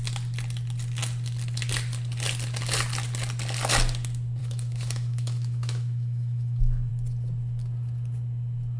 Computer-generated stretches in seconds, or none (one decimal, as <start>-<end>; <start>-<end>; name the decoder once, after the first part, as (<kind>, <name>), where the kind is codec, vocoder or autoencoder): 4.4-6.9 (autoencoder, DAC-VAE)